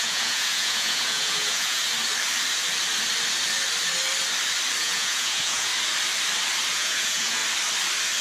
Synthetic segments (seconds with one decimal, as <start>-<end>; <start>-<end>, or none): 0.0-1.8; 4.8-5.7; 6.7-7.4